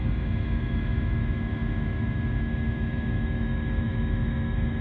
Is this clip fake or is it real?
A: fake